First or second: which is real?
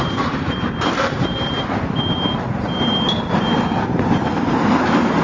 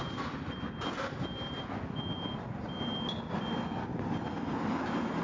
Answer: second